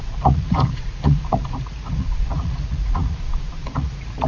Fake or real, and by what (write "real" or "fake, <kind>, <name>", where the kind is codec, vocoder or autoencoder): fake, vocoder, Vocos